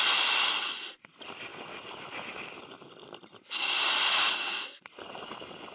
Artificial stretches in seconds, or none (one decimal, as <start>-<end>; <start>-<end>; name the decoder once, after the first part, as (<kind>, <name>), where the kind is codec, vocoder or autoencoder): 0.0-1.0 (vocoder, BigVGAN v2)